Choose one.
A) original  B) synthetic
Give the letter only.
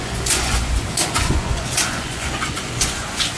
B